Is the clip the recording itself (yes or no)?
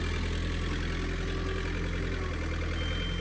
yes